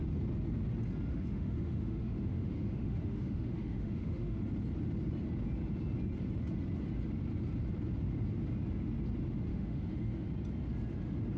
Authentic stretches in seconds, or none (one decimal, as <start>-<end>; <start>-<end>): 0.0-1.1; 4.4-9.5; 10.3-11.4

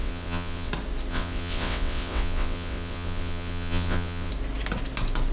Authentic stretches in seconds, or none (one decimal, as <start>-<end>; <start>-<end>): 0.7-1.1; 4.3-5.3

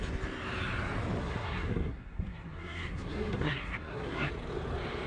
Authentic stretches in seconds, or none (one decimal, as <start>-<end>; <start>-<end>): 0.0-1.2; 4.3-5.1

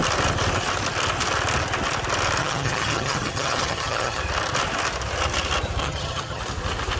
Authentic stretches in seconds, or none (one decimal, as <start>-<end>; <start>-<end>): 0.0-2.4; 4.2-5.8; 6.4-7.0

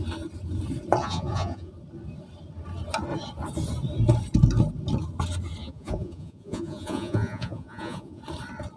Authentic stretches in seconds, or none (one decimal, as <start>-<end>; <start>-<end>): 0.0-1.0; 1.7-5.6; 8.2-8.8

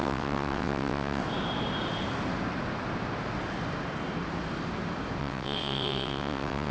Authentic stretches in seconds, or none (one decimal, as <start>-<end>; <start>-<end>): 1.2-5.2

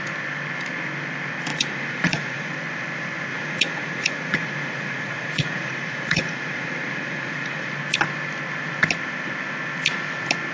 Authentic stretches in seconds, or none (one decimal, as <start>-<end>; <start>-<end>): 0.0-1.5; 2.5-3.3; 7.7-10.5

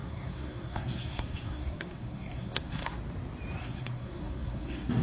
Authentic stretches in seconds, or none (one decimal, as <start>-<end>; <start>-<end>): 3.0-3.6